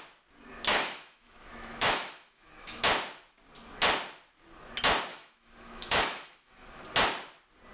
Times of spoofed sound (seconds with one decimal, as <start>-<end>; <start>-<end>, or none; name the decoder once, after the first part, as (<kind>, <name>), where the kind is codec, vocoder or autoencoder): 0.7-2.8 (autoencoder, DAC-VAE); 5.1-6.8